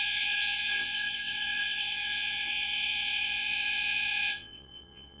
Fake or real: fake